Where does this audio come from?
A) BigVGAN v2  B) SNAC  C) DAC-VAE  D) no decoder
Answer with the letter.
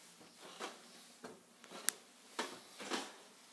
D